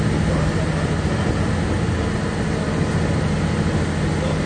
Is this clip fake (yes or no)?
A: no